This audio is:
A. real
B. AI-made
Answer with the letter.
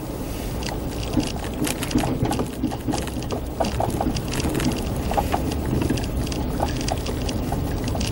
A